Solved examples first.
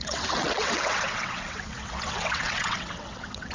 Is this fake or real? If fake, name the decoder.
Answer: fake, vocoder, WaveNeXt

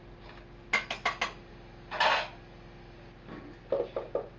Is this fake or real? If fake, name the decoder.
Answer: real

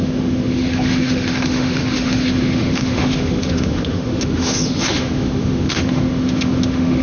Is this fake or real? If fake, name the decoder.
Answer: fake, autoencoder, DAC-VAE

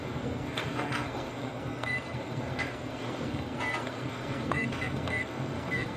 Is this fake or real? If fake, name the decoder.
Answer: fake, codec, SNAC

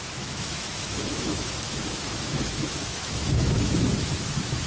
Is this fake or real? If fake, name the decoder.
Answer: fake, autoencoder, DAC-VAE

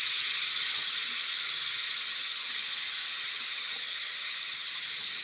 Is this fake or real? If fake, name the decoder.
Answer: fake, vocoder, HiFi-GAN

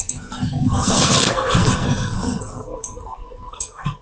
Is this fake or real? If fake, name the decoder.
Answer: fake, codec, SNAC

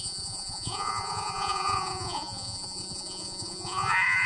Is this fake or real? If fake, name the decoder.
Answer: fake, vocoder, Vocos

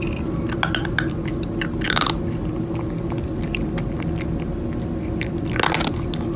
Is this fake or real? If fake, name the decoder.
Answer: real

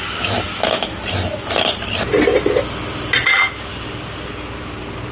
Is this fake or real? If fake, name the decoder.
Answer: real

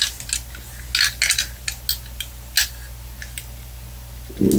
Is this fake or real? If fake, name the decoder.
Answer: real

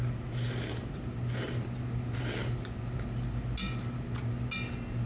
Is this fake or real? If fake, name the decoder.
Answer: real